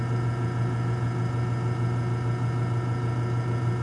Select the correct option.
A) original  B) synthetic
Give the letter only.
A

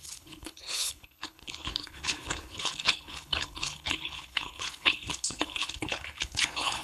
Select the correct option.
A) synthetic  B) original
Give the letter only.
A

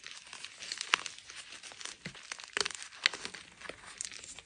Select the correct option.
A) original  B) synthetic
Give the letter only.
A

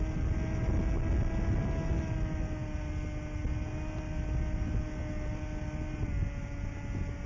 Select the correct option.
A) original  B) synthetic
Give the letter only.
A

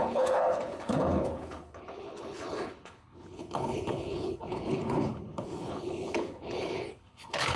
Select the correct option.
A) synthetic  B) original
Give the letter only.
A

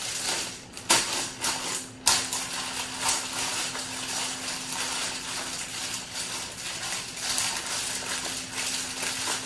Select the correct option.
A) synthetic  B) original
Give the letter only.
B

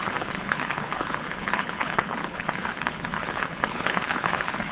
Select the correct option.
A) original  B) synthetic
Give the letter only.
B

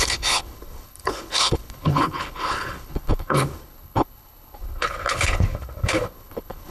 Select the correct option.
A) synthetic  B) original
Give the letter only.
A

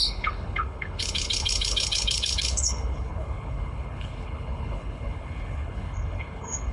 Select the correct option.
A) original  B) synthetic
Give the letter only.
B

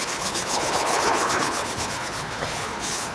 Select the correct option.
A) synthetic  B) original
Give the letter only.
A